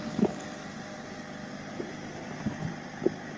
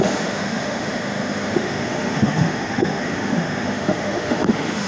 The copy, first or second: second